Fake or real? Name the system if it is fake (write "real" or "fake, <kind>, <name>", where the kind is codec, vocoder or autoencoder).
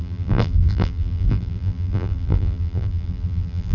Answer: fake, vocoder, BigVGAN v2